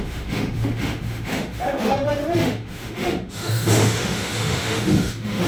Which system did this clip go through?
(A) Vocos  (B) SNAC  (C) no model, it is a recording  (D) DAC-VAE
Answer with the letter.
D